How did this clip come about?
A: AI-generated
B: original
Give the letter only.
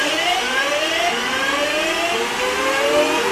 B